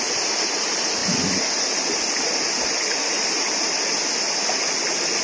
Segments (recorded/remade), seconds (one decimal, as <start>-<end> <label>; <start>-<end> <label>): 0.0-5.2 recorded